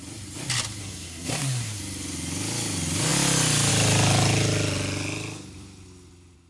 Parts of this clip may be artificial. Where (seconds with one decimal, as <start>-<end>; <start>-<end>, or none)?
0.8-1.8